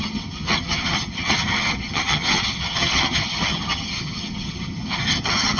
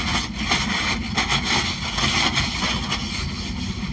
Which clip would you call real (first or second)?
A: second